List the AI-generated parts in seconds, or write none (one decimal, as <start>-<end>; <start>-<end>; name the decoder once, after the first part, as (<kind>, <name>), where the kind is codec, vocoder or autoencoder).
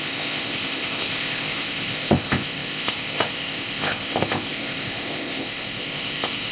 0.0-6.5 (codec, ZipCodec)